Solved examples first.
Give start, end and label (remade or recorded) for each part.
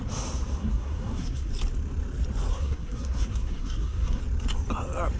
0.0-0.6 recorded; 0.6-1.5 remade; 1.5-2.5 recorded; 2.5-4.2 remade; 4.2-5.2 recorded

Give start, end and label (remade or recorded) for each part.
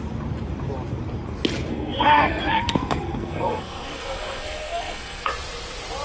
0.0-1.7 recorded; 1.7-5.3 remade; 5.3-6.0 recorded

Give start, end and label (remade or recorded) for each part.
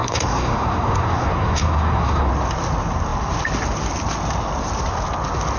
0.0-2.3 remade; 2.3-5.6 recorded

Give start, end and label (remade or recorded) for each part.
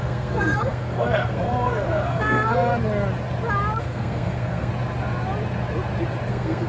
0.0-2.7 remade; 2.7-3.8 recorded; 3.8-4.7 remade; 4.7-6.3 recorded; 6.3-6.7 remade